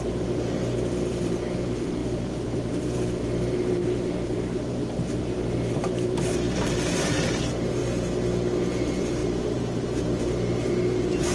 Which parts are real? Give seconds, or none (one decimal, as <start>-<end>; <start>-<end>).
7.8-8.7